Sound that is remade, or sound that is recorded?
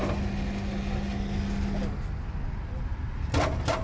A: recorded